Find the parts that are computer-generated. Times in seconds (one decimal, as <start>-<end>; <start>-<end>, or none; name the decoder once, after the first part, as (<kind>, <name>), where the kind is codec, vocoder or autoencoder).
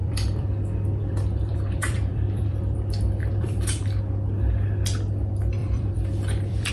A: 0.0-4.0 (vocoder, BigVGAN v2); 5.6-6.7